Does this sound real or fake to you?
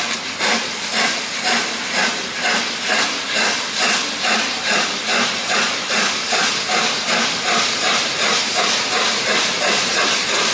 real